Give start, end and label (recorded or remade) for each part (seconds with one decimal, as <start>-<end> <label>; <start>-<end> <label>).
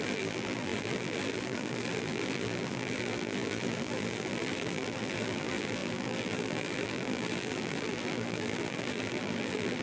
0.0-9.8 remade